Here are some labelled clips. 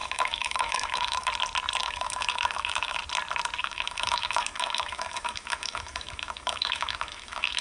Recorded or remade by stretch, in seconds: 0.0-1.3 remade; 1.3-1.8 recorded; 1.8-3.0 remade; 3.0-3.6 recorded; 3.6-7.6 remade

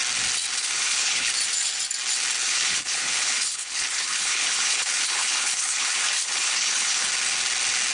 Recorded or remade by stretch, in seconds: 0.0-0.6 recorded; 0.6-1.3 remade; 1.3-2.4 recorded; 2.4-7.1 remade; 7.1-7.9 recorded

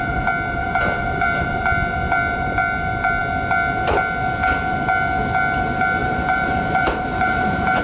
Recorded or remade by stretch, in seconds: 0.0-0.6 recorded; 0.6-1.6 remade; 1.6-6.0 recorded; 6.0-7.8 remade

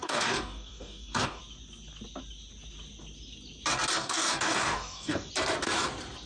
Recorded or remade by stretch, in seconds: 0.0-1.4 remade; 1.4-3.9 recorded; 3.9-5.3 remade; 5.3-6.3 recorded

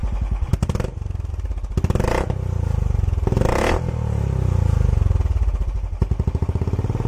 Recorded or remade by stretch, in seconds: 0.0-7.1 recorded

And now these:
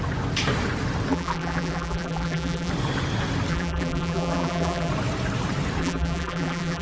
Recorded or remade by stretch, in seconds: 0.0-1.1 recorded; 1.1-2.7 remade; 2.7-3.5 recorded; 3.5-4.9 remade; 4.9-5.8 recorded; 5.8-6.8 remade

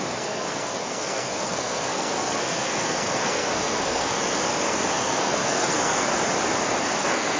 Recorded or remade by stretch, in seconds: 0.0-6.1 remade; 6.1-6.8 recorded; 6.8-7.4 remade

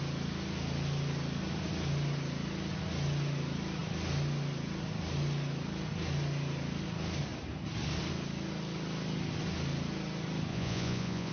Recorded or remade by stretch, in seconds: 0.0-10.5 recorded; 10.5-11.3 remade